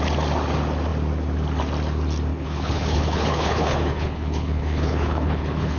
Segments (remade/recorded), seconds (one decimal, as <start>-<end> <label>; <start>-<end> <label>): 0.0-2.3 recorded; 2.3-5.8 remade